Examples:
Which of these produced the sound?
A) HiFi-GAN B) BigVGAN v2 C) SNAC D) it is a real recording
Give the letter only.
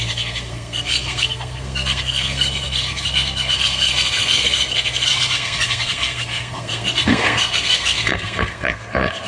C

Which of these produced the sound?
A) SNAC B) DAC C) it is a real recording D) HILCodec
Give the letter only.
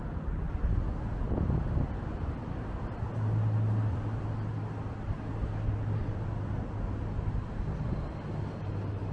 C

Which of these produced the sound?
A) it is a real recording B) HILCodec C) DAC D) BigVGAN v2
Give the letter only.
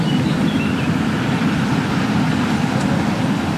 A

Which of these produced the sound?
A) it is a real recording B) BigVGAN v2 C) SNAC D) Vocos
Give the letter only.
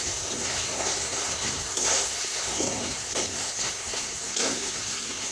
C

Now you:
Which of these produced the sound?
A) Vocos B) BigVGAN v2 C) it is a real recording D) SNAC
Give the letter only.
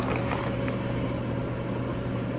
C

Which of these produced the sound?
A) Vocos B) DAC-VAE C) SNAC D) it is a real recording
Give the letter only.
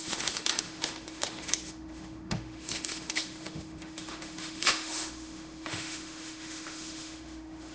B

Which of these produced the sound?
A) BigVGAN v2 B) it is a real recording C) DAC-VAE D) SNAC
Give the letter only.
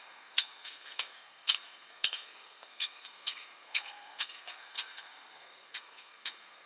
D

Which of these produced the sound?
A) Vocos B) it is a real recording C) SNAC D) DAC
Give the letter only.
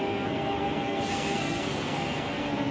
C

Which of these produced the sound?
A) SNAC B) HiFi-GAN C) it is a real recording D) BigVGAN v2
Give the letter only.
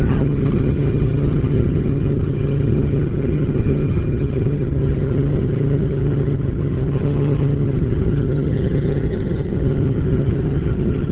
B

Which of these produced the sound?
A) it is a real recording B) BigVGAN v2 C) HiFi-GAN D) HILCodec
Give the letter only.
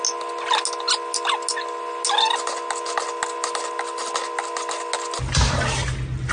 A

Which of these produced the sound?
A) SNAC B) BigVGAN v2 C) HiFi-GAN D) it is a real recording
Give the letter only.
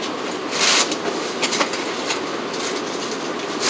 D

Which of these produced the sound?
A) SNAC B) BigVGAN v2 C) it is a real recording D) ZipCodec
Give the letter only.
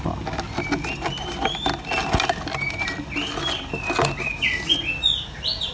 C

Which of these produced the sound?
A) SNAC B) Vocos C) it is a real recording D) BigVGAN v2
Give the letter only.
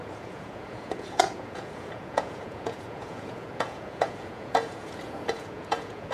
B